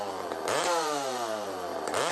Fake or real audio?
fake